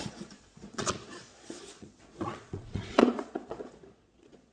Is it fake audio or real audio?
fake